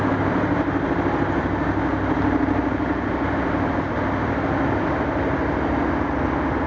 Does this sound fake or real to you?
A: real